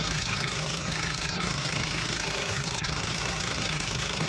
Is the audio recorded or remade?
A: remade